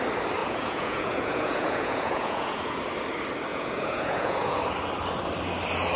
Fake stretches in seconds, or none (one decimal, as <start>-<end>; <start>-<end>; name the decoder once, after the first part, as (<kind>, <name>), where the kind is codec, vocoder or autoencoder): 0.4-2.8 (vocoder, Vocos); 3.5-4.6